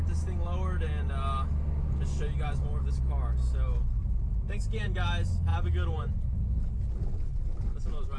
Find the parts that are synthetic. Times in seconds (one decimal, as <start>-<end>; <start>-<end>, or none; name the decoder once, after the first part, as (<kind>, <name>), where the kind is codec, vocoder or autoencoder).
4.0-4.6 (vocoder, BigVGAN v2)